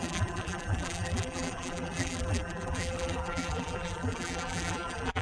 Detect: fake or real fake